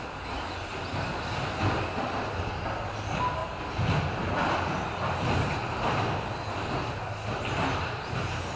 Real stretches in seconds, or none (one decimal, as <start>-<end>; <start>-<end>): 0.0-8.6